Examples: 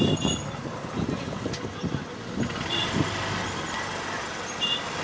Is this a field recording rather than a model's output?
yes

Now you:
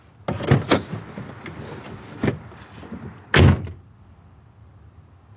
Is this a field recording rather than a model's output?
yes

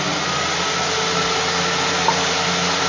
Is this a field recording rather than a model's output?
yes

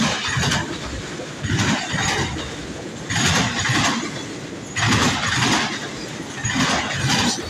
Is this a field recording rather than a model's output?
yes